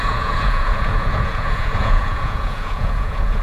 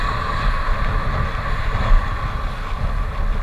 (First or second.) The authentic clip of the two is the second